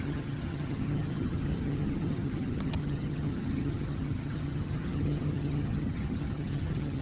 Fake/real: fake